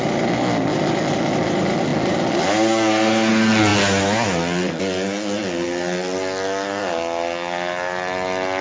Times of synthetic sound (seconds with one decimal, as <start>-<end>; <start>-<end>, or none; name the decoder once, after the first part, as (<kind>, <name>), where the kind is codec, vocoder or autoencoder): none